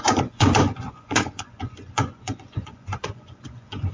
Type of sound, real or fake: fake